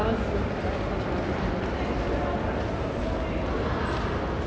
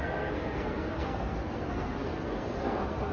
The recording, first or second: first